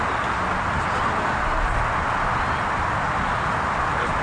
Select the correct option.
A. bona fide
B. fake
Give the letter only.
A